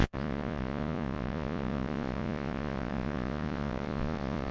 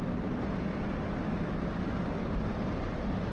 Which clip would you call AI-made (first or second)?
first